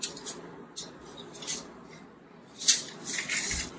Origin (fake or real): real